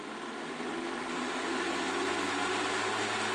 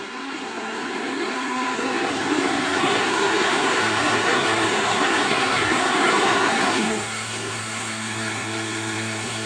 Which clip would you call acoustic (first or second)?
first